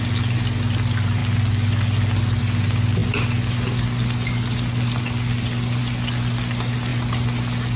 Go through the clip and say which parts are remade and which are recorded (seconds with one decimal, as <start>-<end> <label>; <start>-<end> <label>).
0.0-7.8 recorded